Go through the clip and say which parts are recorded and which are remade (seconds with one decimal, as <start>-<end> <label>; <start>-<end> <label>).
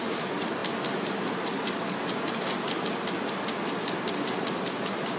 0.0-5.2 recorded